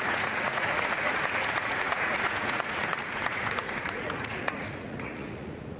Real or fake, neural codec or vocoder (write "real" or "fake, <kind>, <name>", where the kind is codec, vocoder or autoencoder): fake, vocoder, Vocos